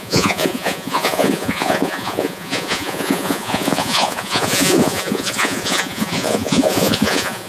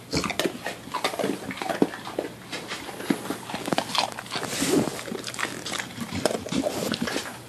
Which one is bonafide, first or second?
second